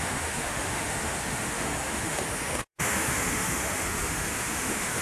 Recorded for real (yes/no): no